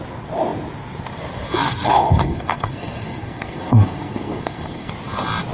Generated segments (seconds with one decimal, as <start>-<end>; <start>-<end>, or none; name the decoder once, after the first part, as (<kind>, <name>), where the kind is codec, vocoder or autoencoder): 1.6-4.9 (codec, SNAC)